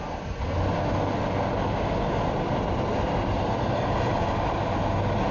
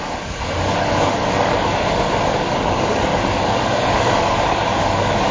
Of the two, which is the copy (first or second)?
second